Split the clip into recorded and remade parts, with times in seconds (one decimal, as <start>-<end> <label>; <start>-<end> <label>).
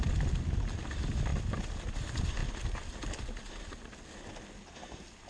0.0-5.3 recorded